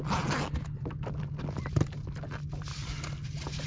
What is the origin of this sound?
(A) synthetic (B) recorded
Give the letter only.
B